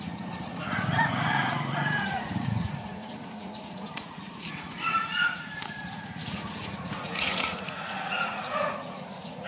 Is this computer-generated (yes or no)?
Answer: yes